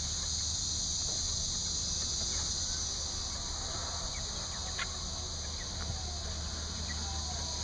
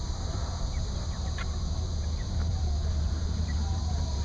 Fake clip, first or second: second